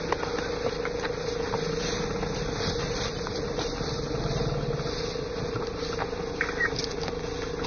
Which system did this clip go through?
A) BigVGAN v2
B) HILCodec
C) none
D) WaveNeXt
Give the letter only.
C